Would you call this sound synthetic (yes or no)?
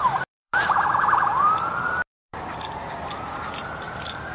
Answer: yes